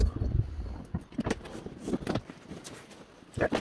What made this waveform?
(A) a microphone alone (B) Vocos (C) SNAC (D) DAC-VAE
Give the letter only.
A